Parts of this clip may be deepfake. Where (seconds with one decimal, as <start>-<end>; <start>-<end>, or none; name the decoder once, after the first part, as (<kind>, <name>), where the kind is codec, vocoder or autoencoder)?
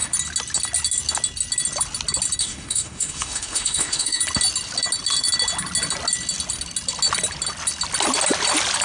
2.4-4.2 (autoencoder, DAC-VAE)